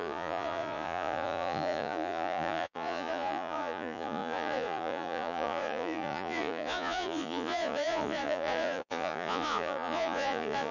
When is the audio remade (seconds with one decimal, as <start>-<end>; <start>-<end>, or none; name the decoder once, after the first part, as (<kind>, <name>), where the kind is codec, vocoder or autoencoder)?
0.0-10.7 (vocoder, Vocos)